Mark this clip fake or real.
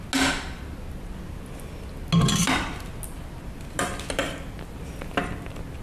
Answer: real